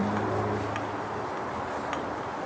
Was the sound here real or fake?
real